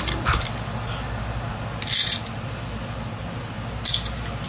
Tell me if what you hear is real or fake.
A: real